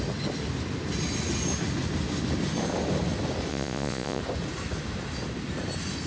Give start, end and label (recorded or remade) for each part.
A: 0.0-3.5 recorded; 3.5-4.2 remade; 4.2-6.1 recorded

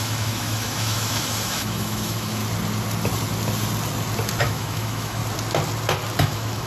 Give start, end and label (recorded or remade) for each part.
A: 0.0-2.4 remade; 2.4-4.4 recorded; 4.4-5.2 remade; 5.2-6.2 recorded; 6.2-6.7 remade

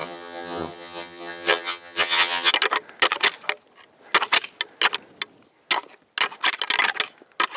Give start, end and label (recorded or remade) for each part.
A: 0.0-2.5 remade; 2.5-7.6 recorded

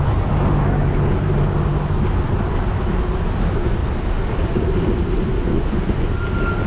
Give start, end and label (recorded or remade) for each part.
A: 0.0-5.5 recorded; 5.5-6.2 remade; 6.2-6.7 recorded

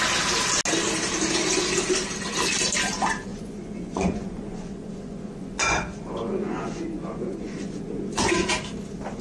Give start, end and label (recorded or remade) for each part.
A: 0.0-3.3 recorded; 3.3-8.5 remade; 8.5-9.2 recorded